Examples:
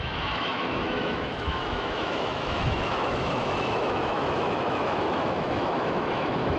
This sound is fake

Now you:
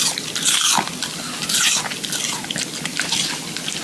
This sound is real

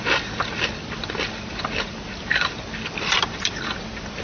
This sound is real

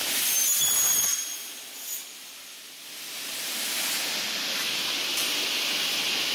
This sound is real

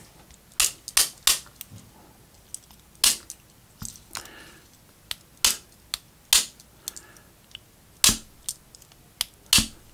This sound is real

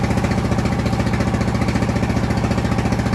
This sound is real